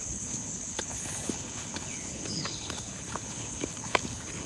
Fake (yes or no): yes